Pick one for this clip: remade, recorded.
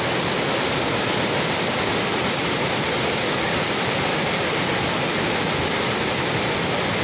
recorded